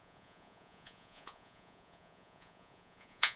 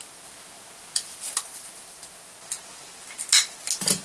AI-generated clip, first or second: first